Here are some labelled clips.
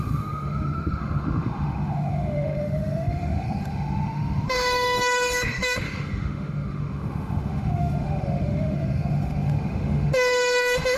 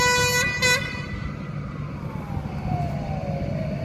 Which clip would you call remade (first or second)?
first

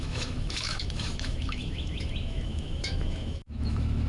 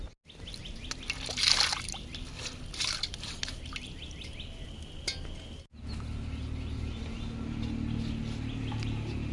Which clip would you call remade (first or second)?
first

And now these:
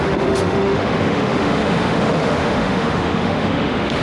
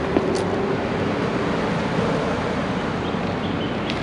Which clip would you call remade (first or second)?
first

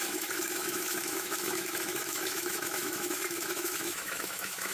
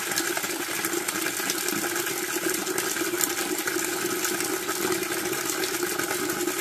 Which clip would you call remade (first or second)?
first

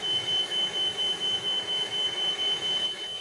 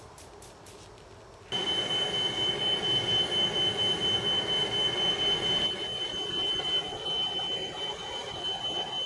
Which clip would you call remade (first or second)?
first